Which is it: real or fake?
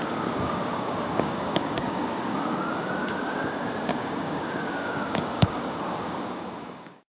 fake